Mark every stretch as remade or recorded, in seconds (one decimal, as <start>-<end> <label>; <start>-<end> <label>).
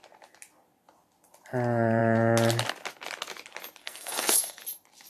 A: 0.0-3.8 recorded; 3.8-4.6 remade; 4.6-5.1 recorded